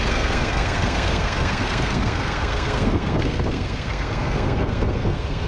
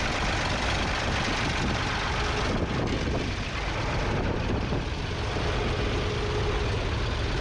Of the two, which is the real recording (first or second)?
second